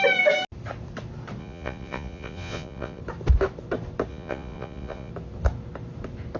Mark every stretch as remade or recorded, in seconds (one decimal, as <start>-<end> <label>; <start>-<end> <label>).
0.0-1.4 recorded; 1.4-3.0 remade; 3.0-4.1 recorded; 4.1-5.1 remade; 5.1-6.4 recorded